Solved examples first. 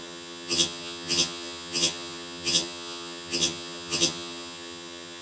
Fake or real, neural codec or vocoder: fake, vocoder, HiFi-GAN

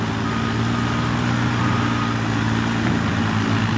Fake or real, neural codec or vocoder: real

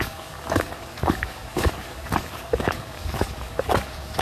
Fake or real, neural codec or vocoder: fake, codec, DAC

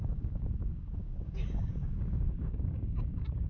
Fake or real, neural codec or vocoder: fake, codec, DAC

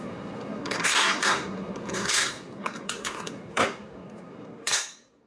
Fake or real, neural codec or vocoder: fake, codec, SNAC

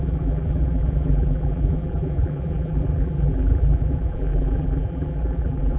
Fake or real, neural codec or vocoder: fake, vocoder, BigVGAN v2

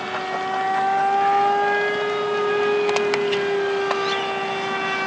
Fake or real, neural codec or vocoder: real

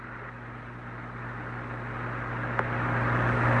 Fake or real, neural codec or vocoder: real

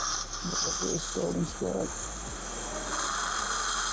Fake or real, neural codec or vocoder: real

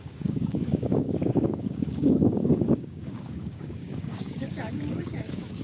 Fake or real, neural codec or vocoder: fake, codec, DAC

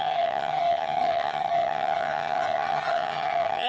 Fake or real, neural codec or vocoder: fake, vocoder, HiFi-GAN